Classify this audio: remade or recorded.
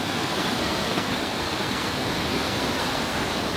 remade